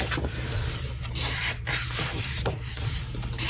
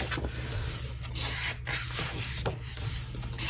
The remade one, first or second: first